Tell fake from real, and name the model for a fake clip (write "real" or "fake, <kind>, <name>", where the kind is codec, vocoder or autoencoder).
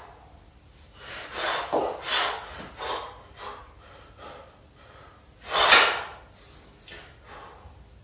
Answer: real